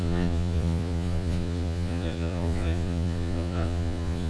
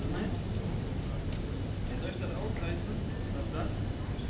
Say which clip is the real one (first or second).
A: second